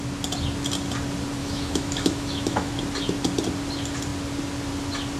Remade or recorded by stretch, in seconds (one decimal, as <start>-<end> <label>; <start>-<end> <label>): 0.0-1.4 recorded; 1.4-2.7 remade; 2.7-5.2 recorded